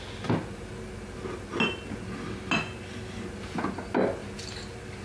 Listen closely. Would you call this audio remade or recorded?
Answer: recorded